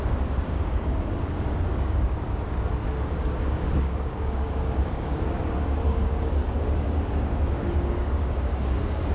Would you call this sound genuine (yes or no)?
no